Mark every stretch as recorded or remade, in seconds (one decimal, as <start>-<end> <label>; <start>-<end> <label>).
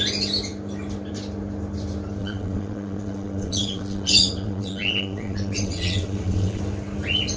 0.0-2.2 recorded; 2.2-6.6 remade; 6.6-7.4 recorded